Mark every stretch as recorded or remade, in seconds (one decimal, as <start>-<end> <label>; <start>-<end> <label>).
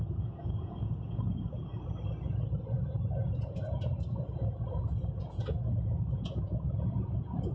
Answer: 0.0-1.7 remade; 1.7-5.1 recorded; 5.1-7.5 remade